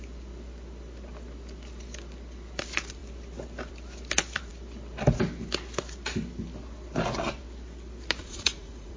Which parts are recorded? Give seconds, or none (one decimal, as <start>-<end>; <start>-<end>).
0.0-8.2